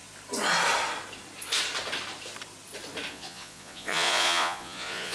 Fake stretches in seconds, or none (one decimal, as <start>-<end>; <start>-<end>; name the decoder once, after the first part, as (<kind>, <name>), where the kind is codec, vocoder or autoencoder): 3.1-5.1 (vocoder, Vocos)